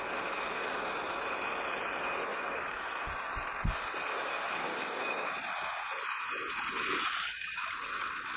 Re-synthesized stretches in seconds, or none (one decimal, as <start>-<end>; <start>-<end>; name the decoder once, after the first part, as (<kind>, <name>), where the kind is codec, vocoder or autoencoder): 2.3-2.9 (codec, DAC); 4.7-5.3